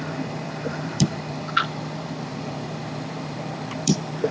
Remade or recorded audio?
remade